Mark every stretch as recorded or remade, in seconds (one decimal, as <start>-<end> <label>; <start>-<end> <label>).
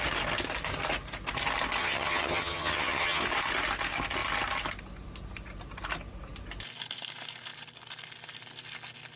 0.0-1.8 recorded; 1.8-3.2 remade; 3.2-9.2 recorded